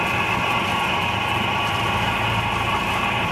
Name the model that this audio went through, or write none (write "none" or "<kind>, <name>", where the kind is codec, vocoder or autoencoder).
vocoder, BigVGAN v2